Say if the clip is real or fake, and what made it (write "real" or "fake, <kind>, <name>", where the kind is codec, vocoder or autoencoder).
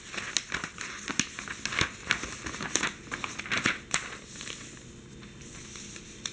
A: real